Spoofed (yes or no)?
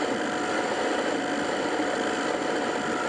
no